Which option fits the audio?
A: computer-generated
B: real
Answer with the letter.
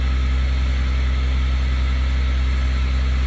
B